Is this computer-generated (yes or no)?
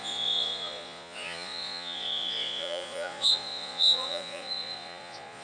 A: yes